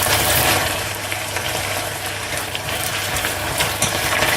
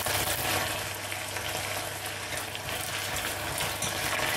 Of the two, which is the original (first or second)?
second